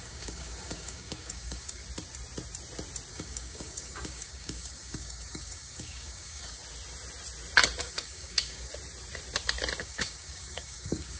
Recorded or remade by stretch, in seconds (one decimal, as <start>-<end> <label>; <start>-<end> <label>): 0.0-1.8 remade; 1.8-3.1 recorded; 3.1-6.6 remade; 6.6-7.8 recorded; 7.8-8.7 remade; 8.7-9.8 recorded; 9.8-11.2 remade